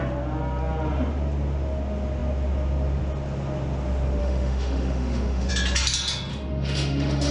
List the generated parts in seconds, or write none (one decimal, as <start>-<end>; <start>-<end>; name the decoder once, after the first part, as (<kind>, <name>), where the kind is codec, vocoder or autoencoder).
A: 4.2-5.5 (autoencoder, DAC-VAE); 6.3-7.3